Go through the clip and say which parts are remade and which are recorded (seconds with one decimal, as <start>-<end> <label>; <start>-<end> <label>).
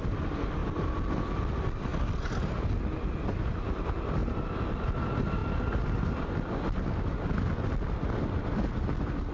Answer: 0.0-9.3 recorded